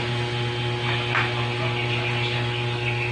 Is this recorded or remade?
recorded